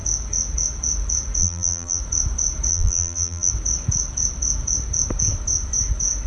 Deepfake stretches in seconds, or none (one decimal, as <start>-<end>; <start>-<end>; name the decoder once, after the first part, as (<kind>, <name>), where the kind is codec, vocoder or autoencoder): 1.4-2.0 (vocoder, BigVGAN v2); 2.7-3.5